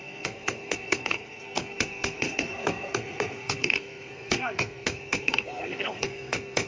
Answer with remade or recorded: remade